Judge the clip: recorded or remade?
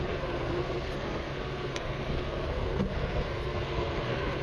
remade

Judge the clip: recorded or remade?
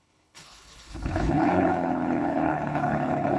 remade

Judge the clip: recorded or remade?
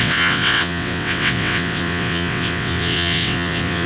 remade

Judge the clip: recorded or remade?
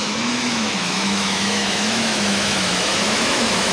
remade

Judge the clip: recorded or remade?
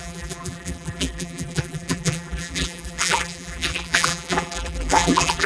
remade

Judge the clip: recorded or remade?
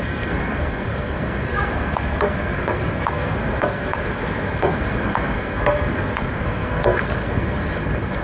remade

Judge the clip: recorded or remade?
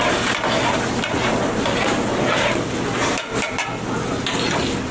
recorded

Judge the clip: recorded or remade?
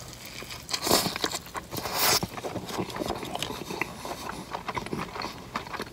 recorded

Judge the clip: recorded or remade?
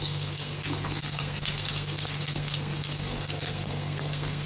remade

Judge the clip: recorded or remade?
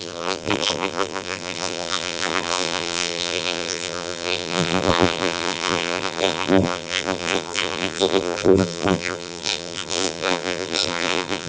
remade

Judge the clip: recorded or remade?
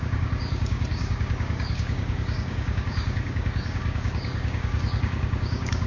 remade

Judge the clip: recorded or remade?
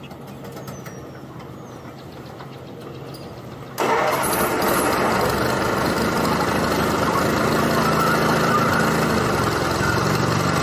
recorded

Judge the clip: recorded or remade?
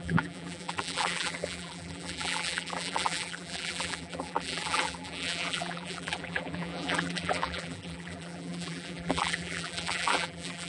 remade